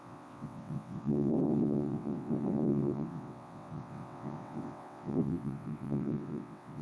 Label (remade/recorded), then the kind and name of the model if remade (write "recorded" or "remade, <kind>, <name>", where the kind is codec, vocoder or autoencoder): remade, vocoder, WaveNeXt